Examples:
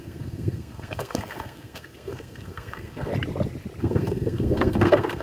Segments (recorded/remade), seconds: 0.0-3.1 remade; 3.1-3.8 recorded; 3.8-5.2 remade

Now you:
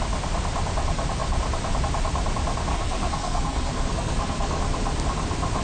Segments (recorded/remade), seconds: 0.0-2.7 recorded; 2.7-4.6 remade; 4.6-5.6 recorded

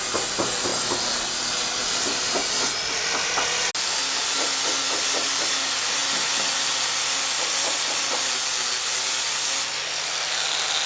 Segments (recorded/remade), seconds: 0.0-10.9 recorded

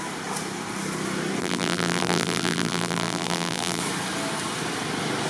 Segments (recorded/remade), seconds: 0.0-1.4 recorded; 1.4-3.8 remade; 3.8-5.3 recorded

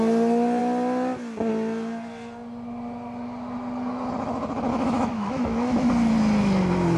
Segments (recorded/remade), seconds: 0.0-4.7 recorded; 4.7-5.9 remade; 5.9-7.0 recorded